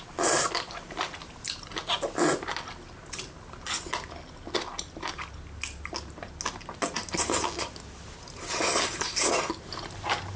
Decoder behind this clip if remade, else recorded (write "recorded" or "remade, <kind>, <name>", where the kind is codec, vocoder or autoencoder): recorded